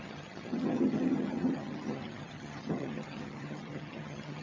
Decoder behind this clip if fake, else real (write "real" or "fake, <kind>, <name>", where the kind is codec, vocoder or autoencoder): fake, vocoder, HiFi-GAN